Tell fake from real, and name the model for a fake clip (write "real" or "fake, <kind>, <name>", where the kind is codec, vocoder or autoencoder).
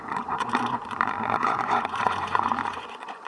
fake, vocoder, Vocos